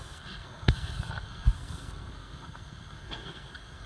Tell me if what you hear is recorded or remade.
remade